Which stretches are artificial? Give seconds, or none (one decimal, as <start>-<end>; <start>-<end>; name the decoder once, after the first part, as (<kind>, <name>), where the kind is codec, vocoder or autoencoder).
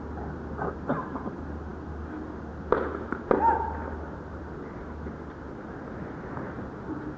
none